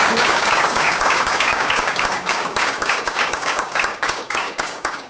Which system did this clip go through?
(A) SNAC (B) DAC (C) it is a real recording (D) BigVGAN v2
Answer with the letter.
B